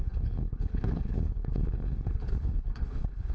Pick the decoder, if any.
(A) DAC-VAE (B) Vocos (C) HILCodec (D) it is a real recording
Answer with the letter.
C